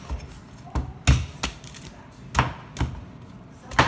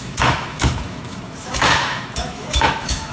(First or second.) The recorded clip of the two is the first